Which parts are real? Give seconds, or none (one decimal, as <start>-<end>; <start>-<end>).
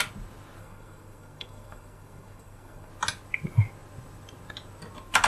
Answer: 0.0-0.6; 2.9-5.3